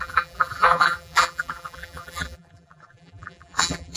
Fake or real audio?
fake